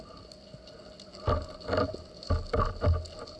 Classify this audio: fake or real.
real